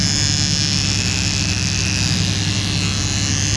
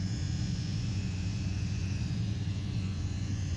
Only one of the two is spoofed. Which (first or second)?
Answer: second